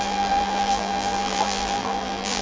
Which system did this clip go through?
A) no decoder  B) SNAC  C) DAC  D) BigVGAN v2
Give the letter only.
D